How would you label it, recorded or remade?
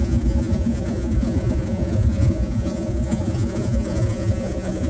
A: remade